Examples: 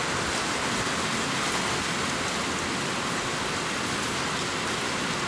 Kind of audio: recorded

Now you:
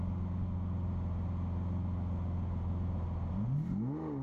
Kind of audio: recorded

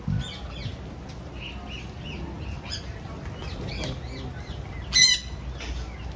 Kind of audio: recorded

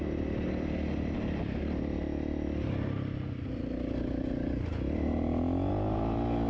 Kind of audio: recorded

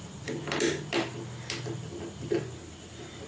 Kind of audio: remade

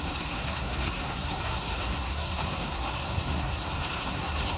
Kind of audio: remade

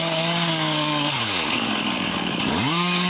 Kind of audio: remade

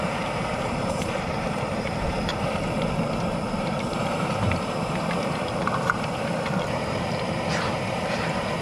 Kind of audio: remade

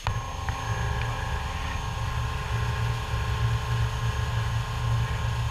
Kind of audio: recorded